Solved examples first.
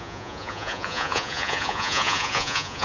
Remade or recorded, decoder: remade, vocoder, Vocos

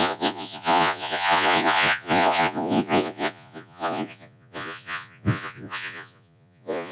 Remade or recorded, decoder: remade, vocoder, Vocos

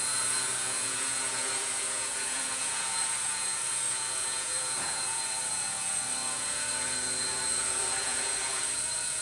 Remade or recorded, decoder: remade, vocoder, Vocos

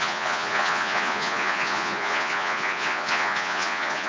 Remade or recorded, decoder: remade, vocoder, Vocos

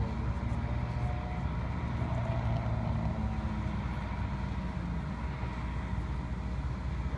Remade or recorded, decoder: recorded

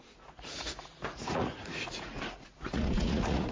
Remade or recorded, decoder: remade, vocoder, Vocos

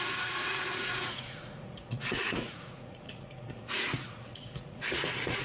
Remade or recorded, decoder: remade, vocoder, Vocos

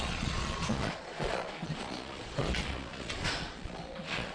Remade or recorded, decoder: remade, vocoder, Vocos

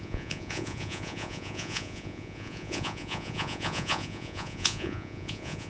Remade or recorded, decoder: remade, vocoder, Vocos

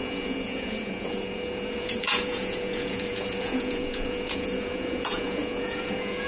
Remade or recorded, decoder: remade, vocoder, Vocos